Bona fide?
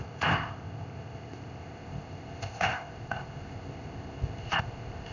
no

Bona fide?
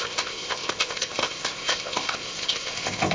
no